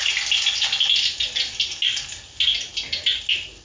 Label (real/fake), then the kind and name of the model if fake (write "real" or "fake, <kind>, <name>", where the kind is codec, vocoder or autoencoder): real